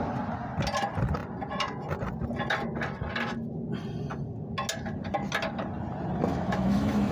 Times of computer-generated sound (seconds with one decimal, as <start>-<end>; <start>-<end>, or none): 6.3-7.1